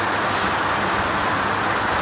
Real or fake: real